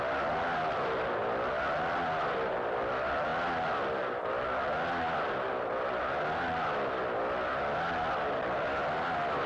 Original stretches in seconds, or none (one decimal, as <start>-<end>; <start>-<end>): 0.0-9.5